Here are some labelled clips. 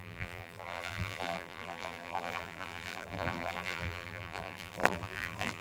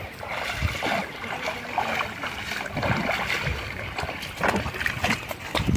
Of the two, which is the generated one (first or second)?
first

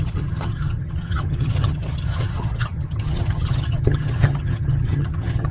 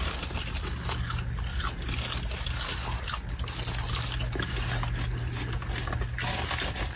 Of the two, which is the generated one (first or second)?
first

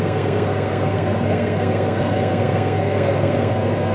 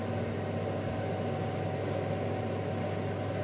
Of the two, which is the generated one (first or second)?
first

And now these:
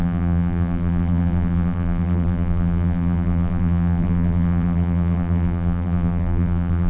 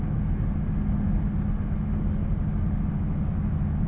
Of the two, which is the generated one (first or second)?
first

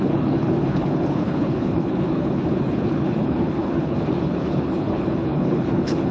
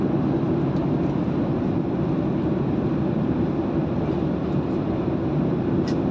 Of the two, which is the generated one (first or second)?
first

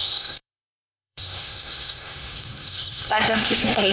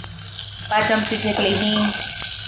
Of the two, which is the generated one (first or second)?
first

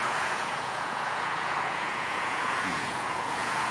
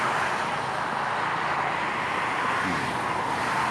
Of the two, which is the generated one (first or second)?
first